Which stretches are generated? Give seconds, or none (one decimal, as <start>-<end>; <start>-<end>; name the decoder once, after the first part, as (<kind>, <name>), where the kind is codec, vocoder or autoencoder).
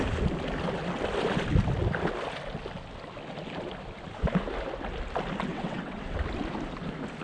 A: 5.5-6.2 (vocoder, WaveNeXt)